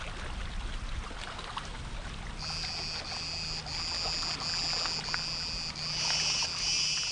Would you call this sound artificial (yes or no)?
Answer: no